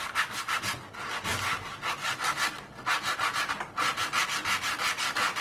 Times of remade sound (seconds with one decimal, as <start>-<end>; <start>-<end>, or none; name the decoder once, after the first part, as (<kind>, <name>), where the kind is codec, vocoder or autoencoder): none